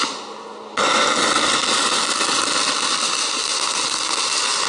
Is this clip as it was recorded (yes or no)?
yes